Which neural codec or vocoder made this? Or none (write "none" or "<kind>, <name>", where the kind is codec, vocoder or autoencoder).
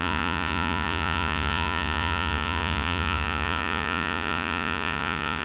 vocoder, Vocos